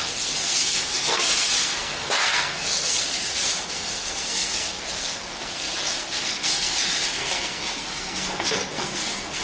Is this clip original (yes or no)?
no